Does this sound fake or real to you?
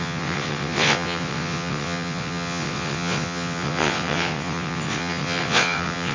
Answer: fake